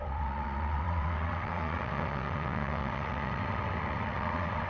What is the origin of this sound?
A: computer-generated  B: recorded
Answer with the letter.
A